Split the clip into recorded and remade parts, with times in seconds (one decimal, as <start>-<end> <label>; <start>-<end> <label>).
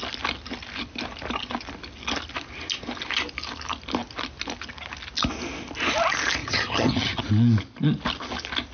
0.0-6.4 recorded; 6.4-7.2 remade; 7.2-8.7 recorded